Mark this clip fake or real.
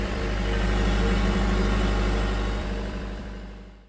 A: fake